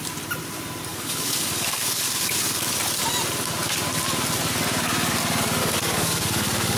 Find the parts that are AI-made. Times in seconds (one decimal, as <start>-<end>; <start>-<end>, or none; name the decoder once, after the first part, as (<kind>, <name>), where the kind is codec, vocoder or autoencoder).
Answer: 0.9-2.7 (codec, DAC); 5.6-6.8